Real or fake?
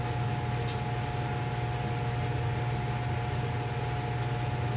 real